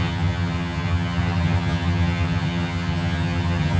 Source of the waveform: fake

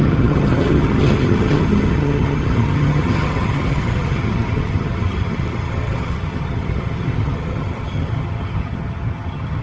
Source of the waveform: fake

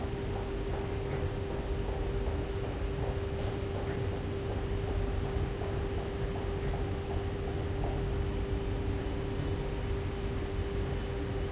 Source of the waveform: real